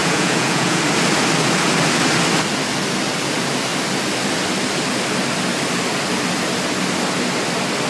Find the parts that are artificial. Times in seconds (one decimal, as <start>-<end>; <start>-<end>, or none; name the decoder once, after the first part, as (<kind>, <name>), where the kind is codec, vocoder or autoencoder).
0.0-0.8 (vocoder, Vocos)